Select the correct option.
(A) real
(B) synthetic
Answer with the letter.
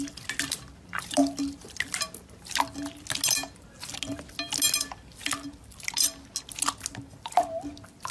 A